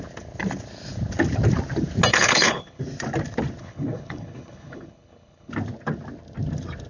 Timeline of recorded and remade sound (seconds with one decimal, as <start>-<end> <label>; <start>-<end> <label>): 0.0-2.1 recorded; 2.1-2.8 remade; 2.8-3.6 recorded; 3.6-5.5 remade; 5.5-6.9 recorded